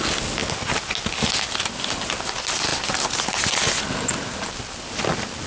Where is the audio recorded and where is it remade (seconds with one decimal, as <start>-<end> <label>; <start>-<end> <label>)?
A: 0.0-5.5 recorded